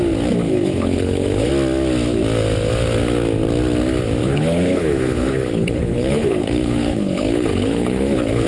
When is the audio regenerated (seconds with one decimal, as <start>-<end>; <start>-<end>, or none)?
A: 0.4-1.5; 4.2-8.5